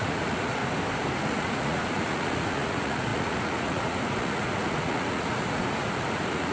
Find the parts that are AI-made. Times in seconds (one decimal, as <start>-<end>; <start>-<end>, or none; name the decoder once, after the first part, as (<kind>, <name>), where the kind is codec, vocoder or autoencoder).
0.0-0.6 (vocoder, Vocos); 1.2-6.5